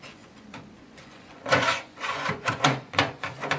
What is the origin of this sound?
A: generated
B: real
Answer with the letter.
A